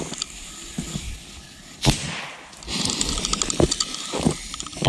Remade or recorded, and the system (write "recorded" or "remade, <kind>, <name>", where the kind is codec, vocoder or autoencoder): recorded